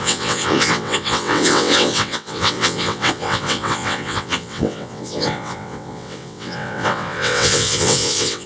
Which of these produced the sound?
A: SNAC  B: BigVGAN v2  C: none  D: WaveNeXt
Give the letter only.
D